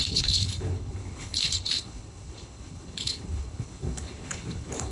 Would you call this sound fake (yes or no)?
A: yes